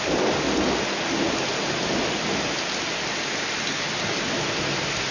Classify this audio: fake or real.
real